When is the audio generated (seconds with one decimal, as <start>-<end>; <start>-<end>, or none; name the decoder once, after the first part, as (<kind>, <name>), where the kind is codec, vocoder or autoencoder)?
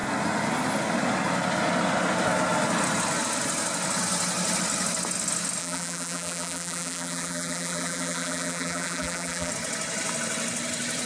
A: 5.6-9.5 (vocoder, BigVGAN v2)